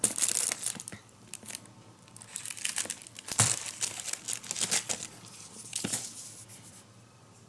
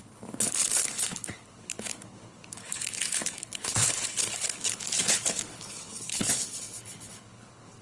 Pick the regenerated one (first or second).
second